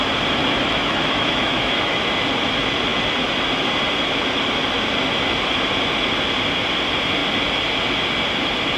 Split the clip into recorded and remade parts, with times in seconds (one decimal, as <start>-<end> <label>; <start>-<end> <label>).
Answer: 0.0-0.4 recorded; 0.4-2.0 remade; 2.0-8.8 recorded